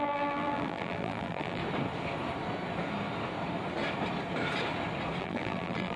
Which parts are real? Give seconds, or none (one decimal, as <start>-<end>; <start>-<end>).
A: 1.6-5.2

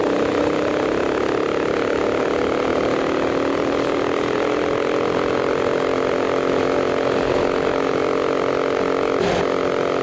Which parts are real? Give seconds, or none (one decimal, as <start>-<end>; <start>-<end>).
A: 0.0-10.0

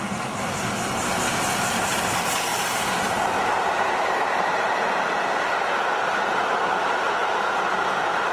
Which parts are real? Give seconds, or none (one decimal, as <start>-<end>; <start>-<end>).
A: 2.5-6.7; 7.2-8.3

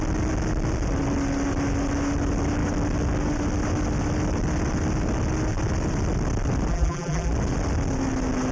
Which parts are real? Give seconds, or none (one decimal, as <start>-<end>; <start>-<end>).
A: 0.0-6.7; 7.3-8.5

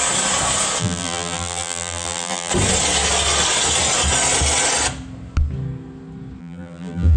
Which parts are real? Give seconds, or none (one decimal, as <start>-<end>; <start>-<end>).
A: 0.0-0.8; 2.5-6.4

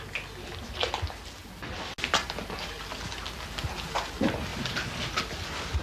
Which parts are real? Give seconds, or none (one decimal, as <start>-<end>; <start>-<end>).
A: 0.0-4.5; 5.2-5.8

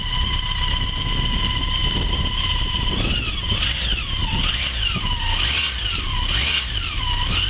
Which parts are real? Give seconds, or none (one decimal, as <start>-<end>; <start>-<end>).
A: 0.0-1.8; 2.9-7.5

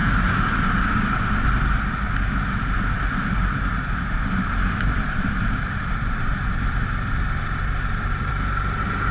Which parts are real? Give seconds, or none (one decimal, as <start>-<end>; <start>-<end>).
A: 0.0-3.7; 8.3-9.1